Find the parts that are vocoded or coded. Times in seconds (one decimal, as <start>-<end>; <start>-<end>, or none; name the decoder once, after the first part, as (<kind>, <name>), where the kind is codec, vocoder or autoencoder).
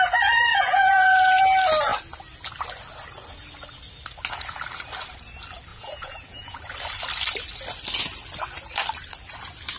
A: 0.5-1.4 (vocoder, Vocos); 5.7-6.6